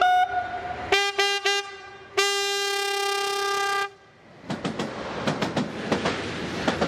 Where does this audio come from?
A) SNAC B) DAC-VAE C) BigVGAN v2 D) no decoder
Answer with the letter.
D